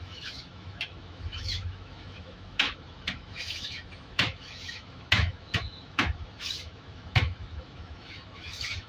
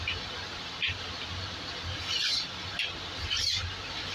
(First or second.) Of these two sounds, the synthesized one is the first